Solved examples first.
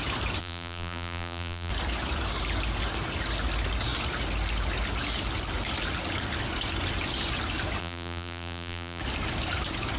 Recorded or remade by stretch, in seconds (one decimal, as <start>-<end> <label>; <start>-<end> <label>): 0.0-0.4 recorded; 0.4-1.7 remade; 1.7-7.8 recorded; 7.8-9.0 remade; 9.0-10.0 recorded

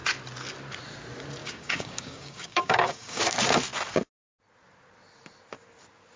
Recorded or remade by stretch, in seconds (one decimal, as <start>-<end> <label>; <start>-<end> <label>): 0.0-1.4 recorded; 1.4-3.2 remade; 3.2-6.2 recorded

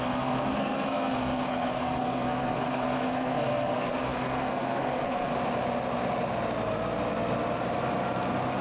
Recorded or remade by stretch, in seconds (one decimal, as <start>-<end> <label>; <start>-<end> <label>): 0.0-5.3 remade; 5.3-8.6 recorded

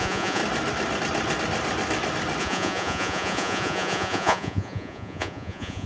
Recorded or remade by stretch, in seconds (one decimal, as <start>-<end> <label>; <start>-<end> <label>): 0.0-0.4 remade; 0.4-2.4 recorded; 2.4-5.9 remade

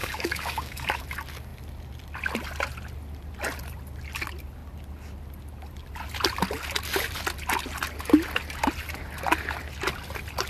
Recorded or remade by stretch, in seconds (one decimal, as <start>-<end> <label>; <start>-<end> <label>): 0.0-1.0 remade; 1.0-10.5 recorded